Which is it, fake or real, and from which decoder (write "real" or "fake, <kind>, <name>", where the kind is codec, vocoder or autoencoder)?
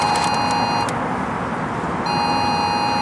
real